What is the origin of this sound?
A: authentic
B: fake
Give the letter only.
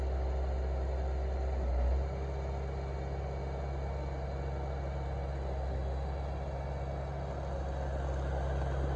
A